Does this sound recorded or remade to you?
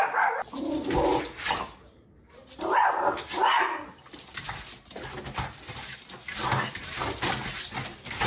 recorded